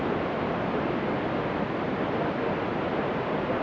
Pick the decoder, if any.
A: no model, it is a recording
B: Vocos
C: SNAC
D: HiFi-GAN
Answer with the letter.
A